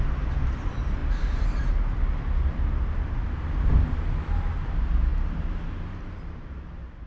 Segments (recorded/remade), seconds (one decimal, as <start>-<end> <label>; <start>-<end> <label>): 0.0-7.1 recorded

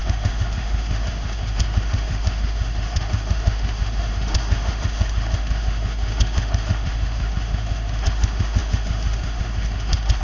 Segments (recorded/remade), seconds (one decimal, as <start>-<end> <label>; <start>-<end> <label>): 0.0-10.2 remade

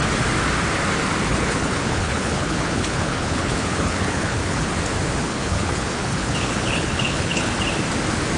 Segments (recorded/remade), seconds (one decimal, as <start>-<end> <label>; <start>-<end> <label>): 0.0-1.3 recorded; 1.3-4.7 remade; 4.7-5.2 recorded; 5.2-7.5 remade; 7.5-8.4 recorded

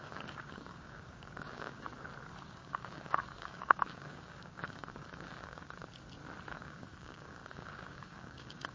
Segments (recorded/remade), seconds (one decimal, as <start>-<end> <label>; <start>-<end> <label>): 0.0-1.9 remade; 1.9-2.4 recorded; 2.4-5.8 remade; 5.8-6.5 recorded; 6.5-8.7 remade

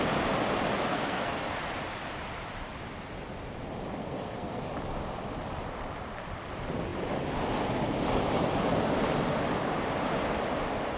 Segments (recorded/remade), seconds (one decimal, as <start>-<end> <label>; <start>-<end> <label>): 0.0-0.9 recorded; 0.9-1.6 remade; 1.6-4.0 recorded; 4.0-4.7 remade; 4.7-11.0 recorded

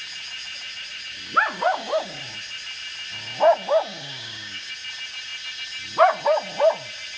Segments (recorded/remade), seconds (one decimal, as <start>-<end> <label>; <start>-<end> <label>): 0.0-1.5 recorded; 1.5-2.2 remade; 2.2-3.9 recorded; 3.9-4.7 remade; 4.7-7.2 recorded

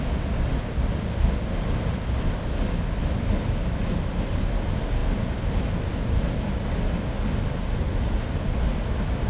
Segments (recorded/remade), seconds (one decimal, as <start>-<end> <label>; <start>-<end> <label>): 0.0-9.3 recorded